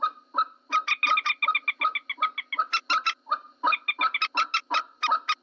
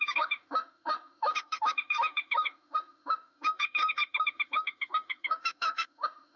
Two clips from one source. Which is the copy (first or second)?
second